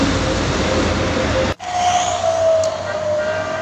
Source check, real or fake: real